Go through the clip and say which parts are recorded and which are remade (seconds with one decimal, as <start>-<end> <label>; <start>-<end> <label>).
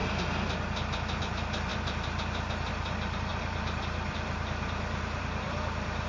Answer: 0.0-1.2 recorded; 1.2-6.1 remade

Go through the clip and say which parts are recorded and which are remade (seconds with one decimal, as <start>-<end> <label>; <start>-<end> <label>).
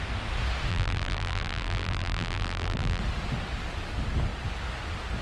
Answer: 0.0-0.7 recorded; 0.7-3.0 remade; 3.0-5.2 recorded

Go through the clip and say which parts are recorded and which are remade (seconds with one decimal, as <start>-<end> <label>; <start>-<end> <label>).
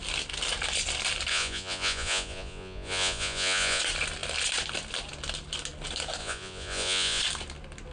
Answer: 0.0-1.3 recorded; 1.3-3.8 remade; 3.8-6.2 recorded; 6.2-7.2 remade; 7.2-7.9 recorded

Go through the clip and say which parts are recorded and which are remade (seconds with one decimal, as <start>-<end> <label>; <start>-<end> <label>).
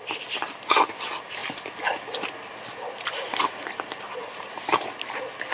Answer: 0.0-4.2 recorded; 4.2-4.8 remade; 4.8-5.5 recorded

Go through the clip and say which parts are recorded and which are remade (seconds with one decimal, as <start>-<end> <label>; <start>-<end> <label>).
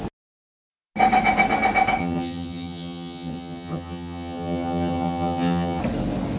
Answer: 0.0-2.0 recorded; 2.0-5.8 remade; 5.8-6.4 recorded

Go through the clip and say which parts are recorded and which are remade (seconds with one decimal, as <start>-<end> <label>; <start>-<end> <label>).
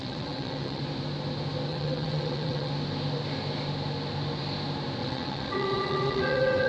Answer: 0.0-0.8 remade; 0.8-1.7 recorded; 1.7-2.7 remade; 2.7-5.0 recorded; 5.0-6.7 remade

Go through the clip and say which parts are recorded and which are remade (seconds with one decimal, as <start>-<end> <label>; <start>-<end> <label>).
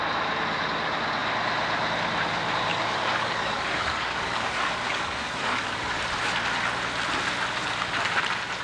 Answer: 0.0-2.7 recorded; 2.7-6.0 remade; 6.0-8.6 recorded